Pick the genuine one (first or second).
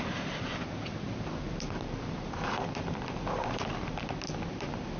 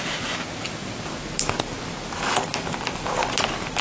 second